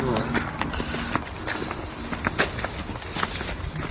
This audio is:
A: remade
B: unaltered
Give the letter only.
B